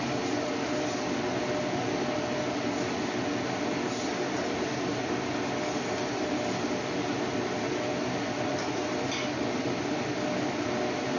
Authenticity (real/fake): real